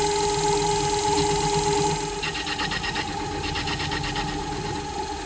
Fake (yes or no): no